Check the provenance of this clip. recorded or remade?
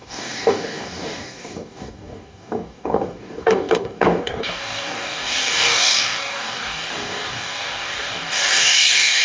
remade